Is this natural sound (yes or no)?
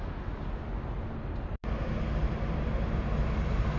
yes